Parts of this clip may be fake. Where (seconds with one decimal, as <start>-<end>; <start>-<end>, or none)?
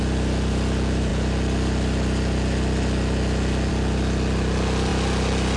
none